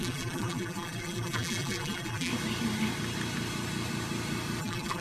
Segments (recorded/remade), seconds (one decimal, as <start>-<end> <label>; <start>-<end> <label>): 0.0-2.3 remade; 2.3-4.6 recorded; 4.6-5.0 remade